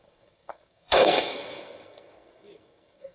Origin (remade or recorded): remade